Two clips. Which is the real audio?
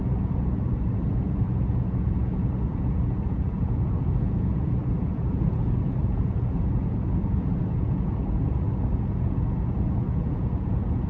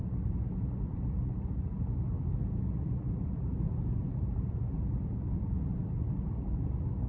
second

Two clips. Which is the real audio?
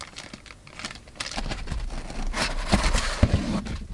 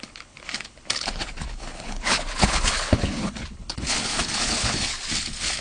first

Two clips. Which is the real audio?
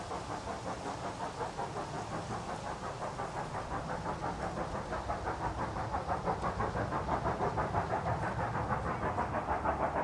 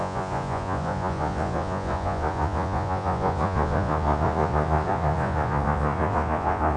first